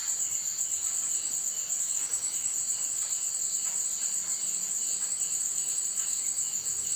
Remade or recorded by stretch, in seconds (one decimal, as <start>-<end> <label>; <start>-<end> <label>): 0.0-1.8 recorded; 1.8-2.5 remade; 2.5-5.4 recorded; 5.4-7.0 remade